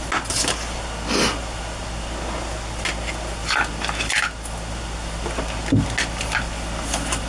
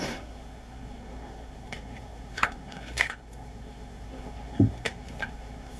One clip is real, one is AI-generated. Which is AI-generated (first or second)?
second